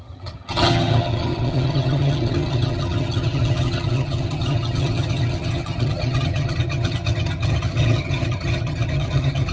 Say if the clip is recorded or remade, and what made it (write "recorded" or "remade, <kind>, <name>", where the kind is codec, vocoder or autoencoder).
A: remade, vocoder, HiFi-GAN